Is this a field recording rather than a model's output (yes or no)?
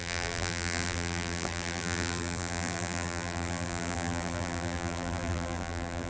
no